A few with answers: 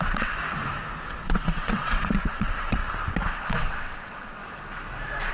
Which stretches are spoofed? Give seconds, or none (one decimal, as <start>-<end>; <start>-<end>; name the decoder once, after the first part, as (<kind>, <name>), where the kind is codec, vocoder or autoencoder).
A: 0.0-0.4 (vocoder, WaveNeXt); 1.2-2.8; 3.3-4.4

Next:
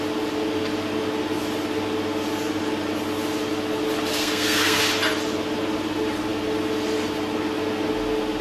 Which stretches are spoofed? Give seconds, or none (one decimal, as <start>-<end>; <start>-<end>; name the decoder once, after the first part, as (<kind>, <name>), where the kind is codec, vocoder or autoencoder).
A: 4.1-4.8 (codec, SNAC)

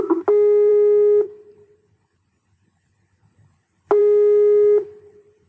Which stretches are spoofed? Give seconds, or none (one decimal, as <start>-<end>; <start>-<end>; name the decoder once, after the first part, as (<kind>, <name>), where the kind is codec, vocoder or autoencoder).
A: none